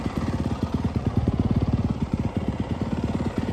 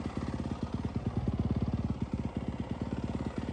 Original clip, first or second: second